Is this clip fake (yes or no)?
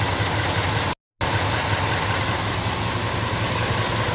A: no